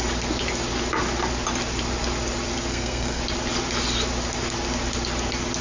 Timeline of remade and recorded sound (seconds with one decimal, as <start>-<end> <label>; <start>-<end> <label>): 0.0-2.7 recorded; 2.7-3.2 remade; 3.2-5.6 recorded